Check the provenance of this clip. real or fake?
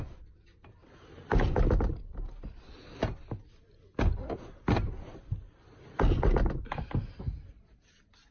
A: real